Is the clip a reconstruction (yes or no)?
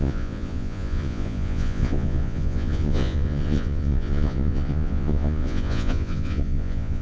yes